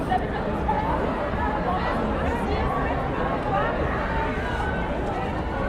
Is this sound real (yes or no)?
yes